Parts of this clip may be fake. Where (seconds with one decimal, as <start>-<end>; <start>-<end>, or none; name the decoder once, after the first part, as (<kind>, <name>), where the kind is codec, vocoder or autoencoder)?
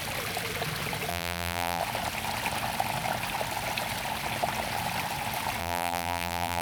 1.1-1.8 (vocoder, BigVGAN v2); 5.6-6.6